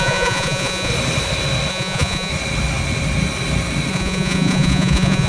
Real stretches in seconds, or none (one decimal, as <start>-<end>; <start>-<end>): 0.9-1.7; 2.3-3.9